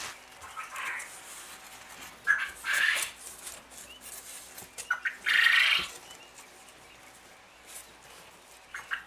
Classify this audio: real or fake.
real